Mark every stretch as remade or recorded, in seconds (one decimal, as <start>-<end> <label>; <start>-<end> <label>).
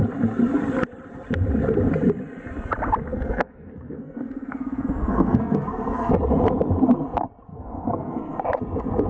0.0-3.1 recorded; 3.1-6.1 remade; 6.1-7.5 recorded; 7.5-8.4 remade; 8.4-9.1 recorded